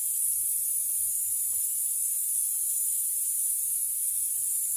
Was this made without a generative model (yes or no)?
yes